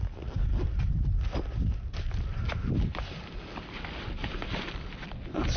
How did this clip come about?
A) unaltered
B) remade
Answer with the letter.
A